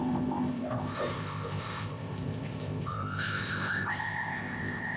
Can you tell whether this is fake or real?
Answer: fake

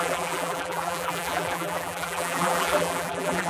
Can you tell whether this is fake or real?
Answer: fake